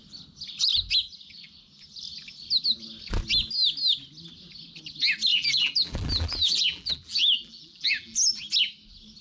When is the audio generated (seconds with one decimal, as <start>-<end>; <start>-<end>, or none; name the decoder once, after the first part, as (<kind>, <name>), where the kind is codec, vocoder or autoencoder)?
5.3-8.3 (vocoder, BigVGAN v2)